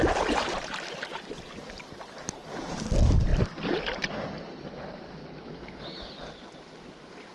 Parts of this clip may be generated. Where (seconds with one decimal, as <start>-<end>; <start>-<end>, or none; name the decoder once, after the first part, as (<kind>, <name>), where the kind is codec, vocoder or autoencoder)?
none